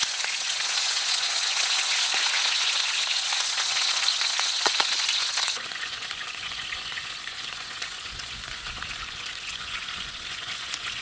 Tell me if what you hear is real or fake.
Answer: fake